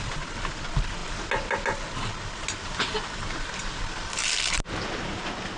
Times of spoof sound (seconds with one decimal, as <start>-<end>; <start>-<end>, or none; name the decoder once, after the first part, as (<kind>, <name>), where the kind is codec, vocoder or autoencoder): none